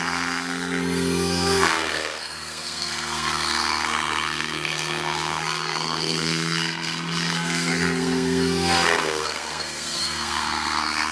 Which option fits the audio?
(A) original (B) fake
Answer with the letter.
B